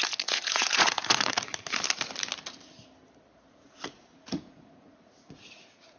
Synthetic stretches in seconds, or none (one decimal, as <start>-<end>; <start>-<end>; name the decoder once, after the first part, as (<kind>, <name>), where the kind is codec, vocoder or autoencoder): 0.0-1.5 (vocoder, Vocos); 3.5-6.0